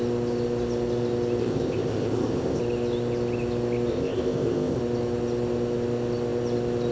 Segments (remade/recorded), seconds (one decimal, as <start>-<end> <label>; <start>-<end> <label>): 0.0-1.4 recorded; 1.4-2.6 remade; 2.6-3.9 recorded; 3.9-4.8 remade; 4.8-6.9 recorded